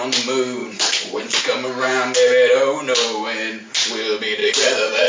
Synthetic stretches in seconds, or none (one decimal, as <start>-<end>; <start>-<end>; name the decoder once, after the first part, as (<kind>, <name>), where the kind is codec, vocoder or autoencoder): 0.6-1.4 (vocoder, Vocos); 4.4-5.1